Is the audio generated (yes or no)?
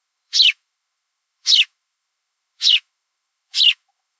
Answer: yes